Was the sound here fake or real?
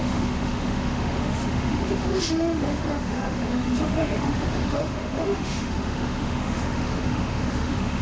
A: fake